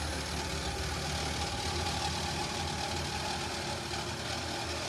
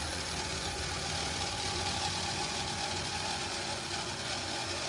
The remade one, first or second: second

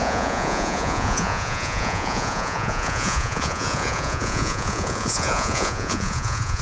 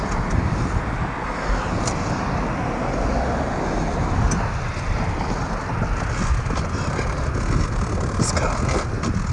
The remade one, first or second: first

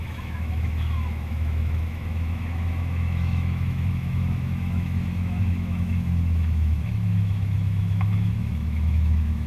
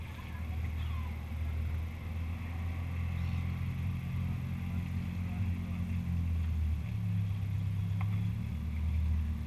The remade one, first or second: first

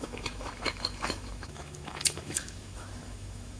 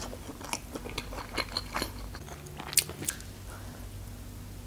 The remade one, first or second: first